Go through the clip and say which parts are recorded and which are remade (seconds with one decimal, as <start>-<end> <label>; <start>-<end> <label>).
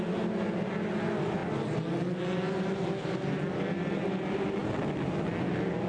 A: 0.0-5.9 recorded